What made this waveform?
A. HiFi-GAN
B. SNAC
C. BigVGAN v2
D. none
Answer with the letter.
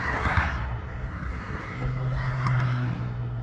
B